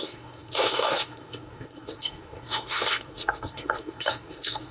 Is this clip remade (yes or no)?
yes